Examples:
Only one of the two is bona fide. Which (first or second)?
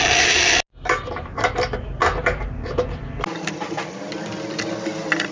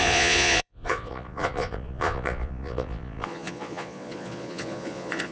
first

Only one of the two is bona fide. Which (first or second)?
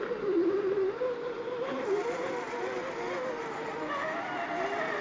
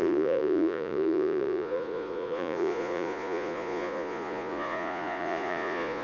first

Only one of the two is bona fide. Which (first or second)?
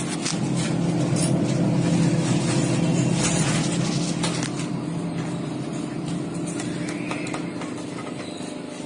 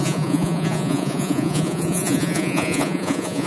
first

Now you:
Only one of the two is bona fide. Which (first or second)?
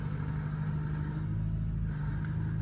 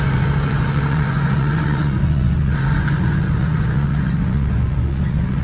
first